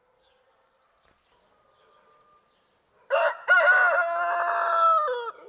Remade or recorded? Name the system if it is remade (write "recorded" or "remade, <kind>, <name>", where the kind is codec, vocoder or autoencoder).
recorded